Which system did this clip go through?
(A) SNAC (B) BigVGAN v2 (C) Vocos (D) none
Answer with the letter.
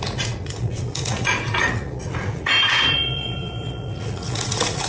C